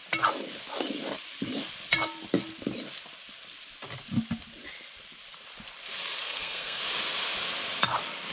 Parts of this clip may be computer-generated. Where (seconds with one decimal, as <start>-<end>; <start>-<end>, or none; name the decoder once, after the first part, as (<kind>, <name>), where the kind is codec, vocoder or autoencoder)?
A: 6.2-6.8 (codec, SNAC)